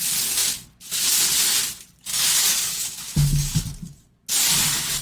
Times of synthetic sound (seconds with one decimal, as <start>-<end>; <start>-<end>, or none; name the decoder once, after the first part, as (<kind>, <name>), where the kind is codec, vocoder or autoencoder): 2.1-3.6 (codec, DAC)